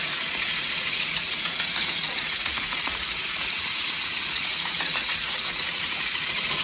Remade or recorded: remade